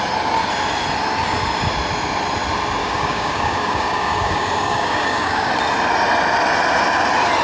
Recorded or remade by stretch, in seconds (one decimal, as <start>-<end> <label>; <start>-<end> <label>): 0.0-2.8 recorded; 2.8-5.5 remade; 5.5-7.4 recorded